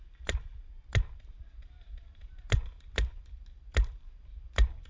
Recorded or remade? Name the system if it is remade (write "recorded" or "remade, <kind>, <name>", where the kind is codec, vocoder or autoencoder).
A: recorded